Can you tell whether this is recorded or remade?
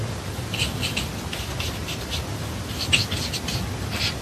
recorded